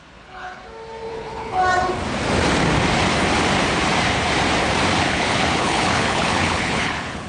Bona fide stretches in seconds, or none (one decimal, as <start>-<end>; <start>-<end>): 0.6-1.1; 1.6-5.0